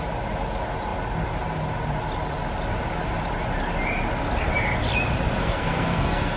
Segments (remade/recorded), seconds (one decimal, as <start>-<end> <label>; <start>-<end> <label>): 0.0-5.4 recorded; 5.4-6.4 remade